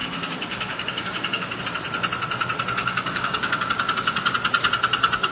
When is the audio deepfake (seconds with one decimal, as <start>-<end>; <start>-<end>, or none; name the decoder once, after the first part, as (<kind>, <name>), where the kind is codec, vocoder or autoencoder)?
0.0-1.6 (codec, DAC); 2.8-3.7